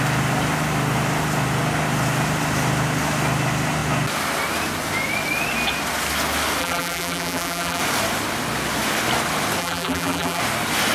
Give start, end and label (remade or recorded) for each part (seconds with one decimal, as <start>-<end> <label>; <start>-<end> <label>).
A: 0.0-6.6 recorded; 6.6-7.8 remade; 7.8-9.6 recorded; 9.6-10.4 remade; 10.4-10.9 recorded